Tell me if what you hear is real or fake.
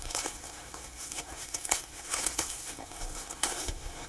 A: fake